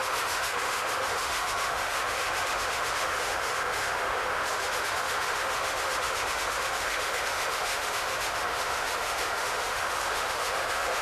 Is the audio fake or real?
fake